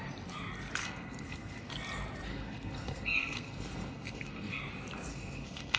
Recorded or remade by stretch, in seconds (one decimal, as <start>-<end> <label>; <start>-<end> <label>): 0.0-0.8 recorded; 0.8-1.7 remade; 1.7-2.3 recorded; 2.3-4.6 remade; 4.6-5.1 recorded; 5.1-5.8 remade